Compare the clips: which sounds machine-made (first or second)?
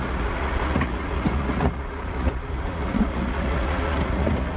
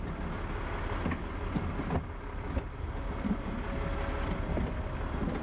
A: first